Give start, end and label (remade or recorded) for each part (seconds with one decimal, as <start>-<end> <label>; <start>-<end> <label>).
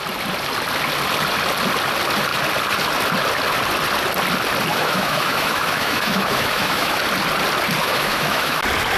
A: 0.0-4.7 recorded; 4.7-7.0 remade; 7.0-7.8 recorded; 7.8-8.6 remade; 8.6-9.0 recorded